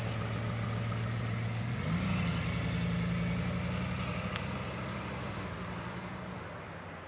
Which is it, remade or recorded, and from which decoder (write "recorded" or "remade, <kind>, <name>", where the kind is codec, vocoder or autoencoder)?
recorded